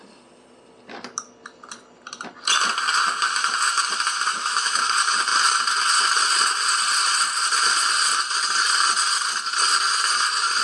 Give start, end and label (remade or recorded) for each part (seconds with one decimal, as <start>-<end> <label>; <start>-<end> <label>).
0.0-4.3 recorded; 4.3-4.8 remade; 4.8-10.6 recorded

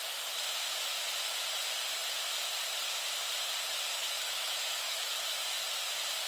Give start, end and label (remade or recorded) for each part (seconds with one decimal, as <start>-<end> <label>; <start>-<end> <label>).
0.0-4.0 recorded; 4.0-5.4 remade; 5.4-6.3 recorded

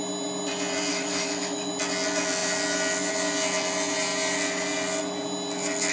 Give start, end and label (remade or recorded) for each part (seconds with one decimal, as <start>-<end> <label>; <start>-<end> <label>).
0.0-0.9 recorded; 0.9-1.7 remade; 1.7-5.9 recorded

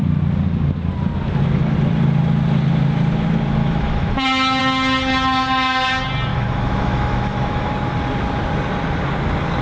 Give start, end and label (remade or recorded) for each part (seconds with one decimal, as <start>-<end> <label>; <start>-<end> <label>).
0.0-3.6 recorded; 3.6-4.6 remade; 4.6-6.3 recorded; 6.3-7.7 remade; 7.7-9.6 recorded

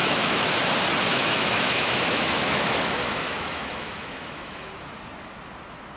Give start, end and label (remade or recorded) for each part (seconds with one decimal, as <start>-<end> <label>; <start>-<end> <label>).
0.0-0.5 remade; 0.5-1.1 recorded; 1.1-4.7 remade; 4.7-6.0 recorded

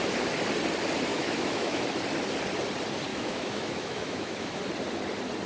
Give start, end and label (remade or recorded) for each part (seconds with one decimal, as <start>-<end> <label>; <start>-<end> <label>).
0.0-1.1 recorded; 1.1-1.8 remade; 1.8-3.1 recorded; 3.1-4.6 remade; 4.6-5.5 recorded

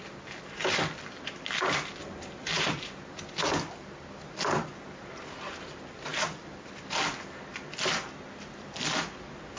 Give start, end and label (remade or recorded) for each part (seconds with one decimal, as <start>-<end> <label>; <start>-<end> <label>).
0.0-9.6 recorded